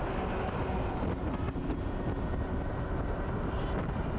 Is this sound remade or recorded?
recorded